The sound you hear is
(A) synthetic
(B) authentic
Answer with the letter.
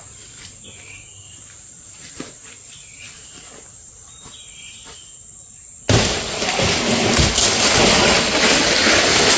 B